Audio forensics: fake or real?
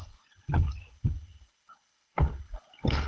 fake